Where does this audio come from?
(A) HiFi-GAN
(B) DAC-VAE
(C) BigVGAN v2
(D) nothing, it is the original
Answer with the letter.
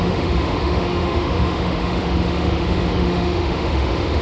B